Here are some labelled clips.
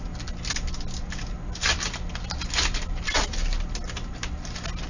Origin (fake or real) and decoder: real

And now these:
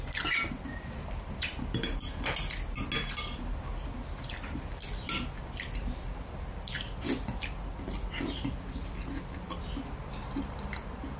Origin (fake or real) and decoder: real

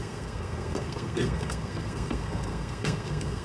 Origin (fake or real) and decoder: fake, codec, SNAC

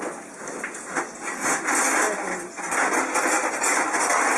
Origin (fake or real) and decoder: real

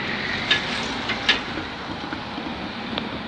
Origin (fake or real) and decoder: real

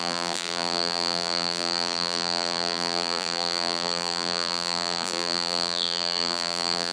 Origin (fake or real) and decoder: fake, vocoder, BigVGAN v2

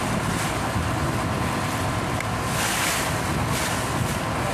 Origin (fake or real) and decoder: real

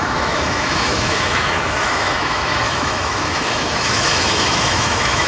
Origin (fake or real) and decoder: fake, autoencoder, DAC-VAE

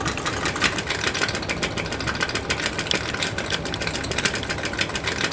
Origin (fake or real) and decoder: real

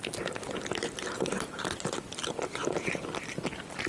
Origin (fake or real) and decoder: real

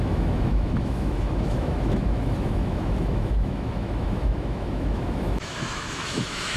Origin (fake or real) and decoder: fake, autoencoder, DAC-VAE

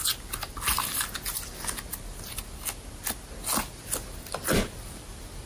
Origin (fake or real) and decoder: real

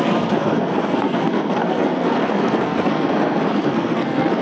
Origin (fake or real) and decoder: fake, codec, SNAC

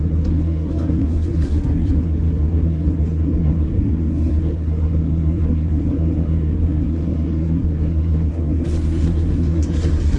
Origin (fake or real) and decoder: fake, codec, SNAC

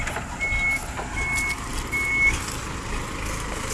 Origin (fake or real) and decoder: real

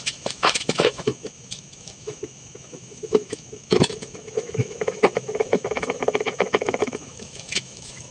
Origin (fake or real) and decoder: fake, autoencoder, DAC-VAE